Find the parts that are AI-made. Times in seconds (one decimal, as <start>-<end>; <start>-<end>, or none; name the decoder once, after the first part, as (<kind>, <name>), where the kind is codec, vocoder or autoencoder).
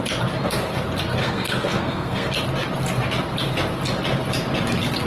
1.2-2.3 (codec, SNAC)